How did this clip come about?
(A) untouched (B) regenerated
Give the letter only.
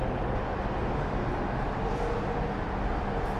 A